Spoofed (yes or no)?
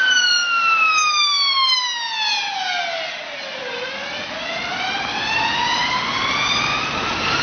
no